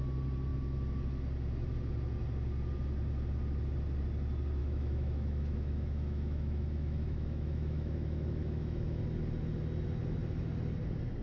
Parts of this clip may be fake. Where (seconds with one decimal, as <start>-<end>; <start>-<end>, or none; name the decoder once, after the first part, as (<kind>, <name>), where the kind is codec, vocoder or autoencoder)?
4.6-9.0 (autoencoder, DAC-VAE)